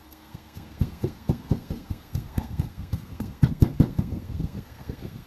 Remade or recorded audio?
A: remade